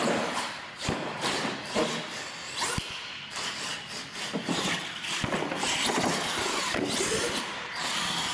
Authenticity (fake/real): real